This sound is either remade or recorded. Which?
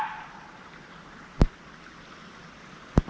recorded